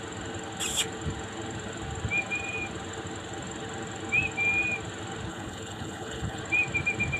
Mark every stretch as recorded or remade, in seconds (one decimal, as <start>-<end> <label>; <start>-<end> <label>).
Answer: 0.0-5.3 recorded; 5.3-6.4 remade; 6.4-7.2 recorded